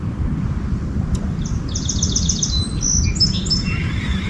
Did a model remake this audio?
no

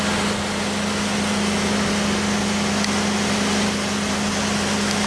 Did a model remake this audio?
no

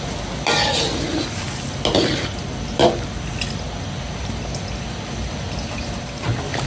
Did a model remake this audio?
no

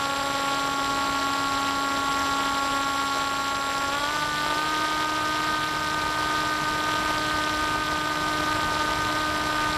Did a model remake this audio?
no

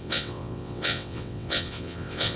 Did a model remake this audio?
yes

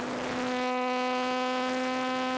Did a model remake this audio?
no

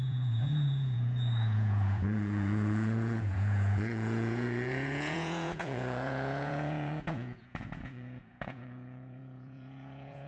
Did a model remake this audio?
yes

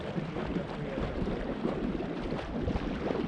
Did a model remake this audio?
no